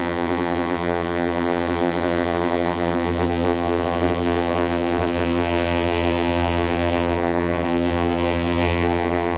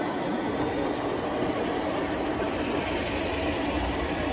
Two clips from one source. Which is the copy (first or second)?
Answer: first